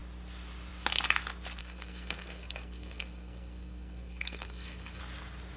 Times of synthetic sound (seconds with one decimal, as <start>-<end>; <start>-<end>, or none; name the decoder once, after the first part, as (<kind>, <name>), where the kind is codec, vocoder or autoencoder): 1.6-5.0 (codec, SNAC)